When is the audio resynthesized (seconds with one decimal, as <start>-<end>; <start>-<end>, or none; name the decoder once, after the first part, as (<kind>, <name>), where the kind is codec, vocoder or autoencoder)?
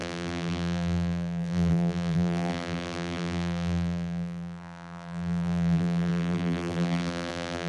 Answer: 0.0-7.7 (vocoder, BigVGAN v2)